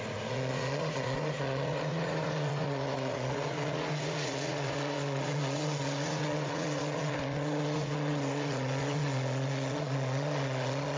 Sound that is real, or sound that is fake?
fake